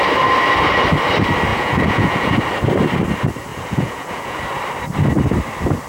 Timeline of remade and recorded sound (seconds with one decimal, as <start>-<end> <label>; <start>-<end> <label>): 0.0-1.5 recorded; 1.5-2.4 remade; 2.4-3.5 recorded; 3.5-4.4 remade; 4.4-5.9 recorded